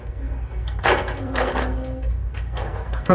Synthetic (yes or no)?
yes